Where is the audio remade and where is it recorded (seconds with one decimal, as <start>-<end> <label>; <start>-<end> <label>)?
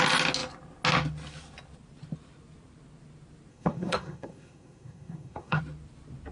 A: 0.0-3.5 recorded; 3.5-5.6 remade; 5.6-6.3 recorded